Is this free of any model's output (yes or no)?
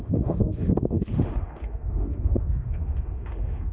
no